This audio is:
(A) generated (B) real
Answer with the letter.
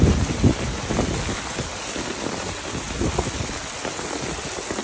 B